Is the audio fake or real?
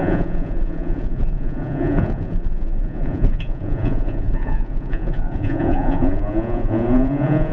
fake